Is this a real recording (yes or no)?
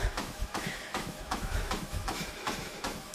no